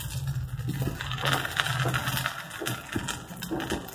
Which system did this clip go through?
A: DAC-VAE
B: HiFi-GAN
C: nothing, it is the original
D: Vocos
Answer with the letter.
C